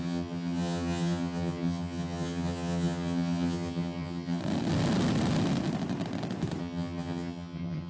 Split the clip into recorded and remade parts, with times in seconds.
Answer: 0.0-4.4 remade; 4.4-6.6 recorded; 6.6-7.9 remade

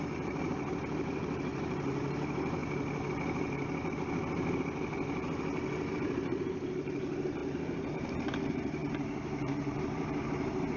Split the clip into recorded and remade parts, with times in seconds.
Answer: 0.0-2.6 remade; 2.6-5.9 recorded; 5.9-7.4 remade; 7.4-7.9 recorded; 7.9-10.8 remade

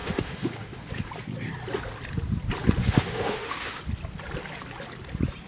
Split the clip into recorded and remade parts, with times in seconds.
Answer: 0.0-1.1 remade; 1.1-2.8 recorded; 2.8-3.8 remade; 3.8-5.5 recorded

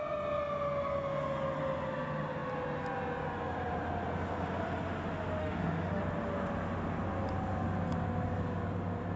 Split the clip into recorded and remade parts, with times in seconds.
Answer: 0.0-5.4 recorded; 5.4-6.0 remade; 6.0-9.2 recorded

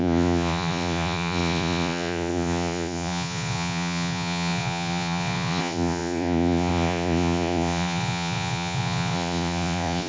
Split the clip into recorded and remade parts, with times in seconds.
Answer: 0.0-10.1 remade